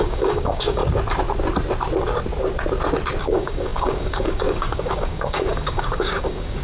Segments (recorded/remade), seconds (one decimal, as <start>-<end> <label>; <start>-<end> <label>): 0.0-0.8 remade; 0.8-3.2 recorded; 3.2-6.6 remade